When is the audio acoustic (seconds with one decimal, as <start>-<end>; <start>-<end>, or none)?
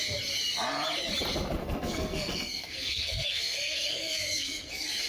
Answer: 0.0-1.6